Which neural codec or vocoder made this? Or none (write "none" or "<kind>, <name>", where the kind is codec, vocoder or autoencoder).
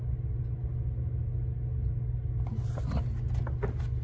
none